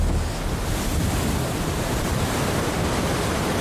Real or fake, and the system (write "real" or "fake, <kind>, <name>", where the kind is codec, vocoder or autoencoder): real